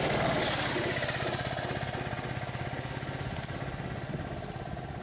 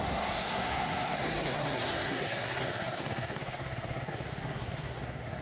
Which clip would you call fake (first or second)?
second